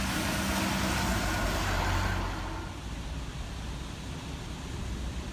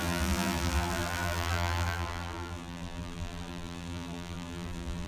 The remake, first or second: second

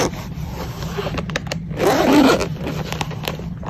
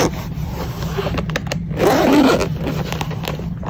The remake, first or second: first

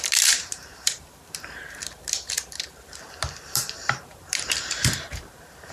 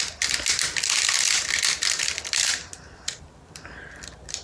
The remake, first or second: first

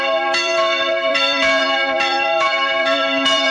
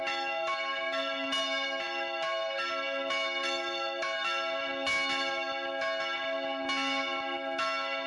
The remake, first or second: first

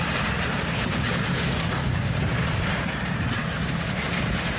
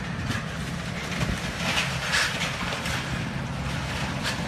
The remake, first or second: first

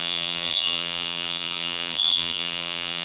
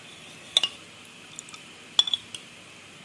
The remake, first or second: first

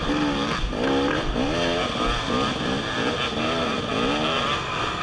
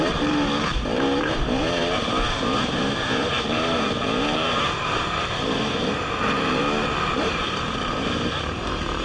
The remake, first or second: second